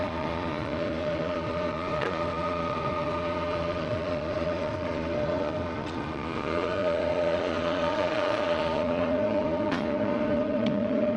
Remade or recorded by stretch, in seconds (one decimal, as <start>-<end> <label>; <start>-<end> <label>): 0.0-11.2 remade